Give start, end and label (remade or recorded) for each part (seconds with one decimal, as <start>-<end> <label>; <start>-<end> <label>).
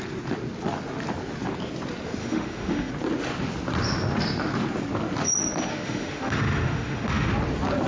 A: 0.0-2.2 recorded; 2.2-2.9 remade; 2.9-5.7 recorded; 5.7-7.3 remade; 7.3-7.9 recorded